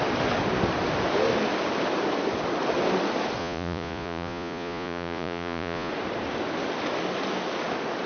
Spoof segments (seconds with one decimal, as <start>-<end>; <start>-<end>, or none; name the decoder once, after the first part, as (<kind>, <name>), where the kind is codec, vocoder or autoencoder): 3.4-5.9 (vocoder, Vocos)